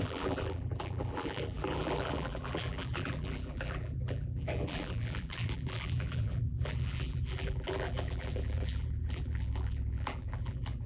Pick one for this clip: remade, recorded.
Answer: remade